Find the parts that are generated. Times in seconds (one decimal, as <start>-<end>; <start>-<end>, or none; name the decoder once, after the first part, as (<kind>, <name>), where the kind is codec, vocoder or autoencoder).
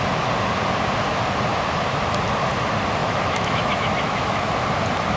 3.0-4.5 (autoencoder, DAC-VAE)